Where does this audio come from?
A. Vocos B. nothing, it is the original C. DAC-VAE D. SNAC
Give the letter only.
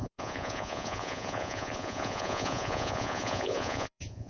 A